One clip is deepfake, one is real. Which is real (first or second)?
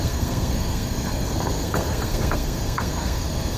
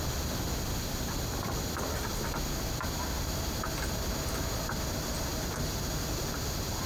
second